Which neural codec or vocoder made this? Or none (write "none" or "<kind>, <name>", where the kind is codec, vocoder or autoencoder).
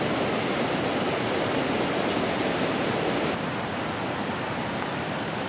none